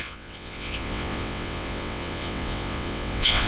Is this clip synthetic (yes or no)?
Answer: yes